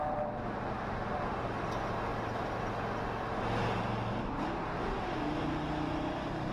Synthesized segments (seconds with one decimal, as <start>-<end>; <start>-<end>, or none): none